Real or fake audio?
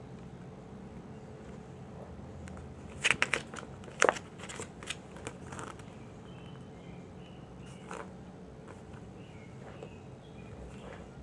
real